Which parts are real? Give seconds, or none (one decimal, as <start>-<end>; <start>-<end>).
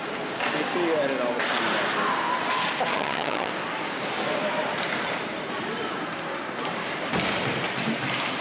0.0-2.9; 3.5-8.4